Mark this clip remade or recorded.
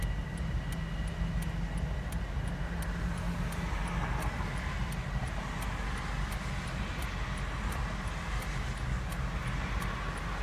recorded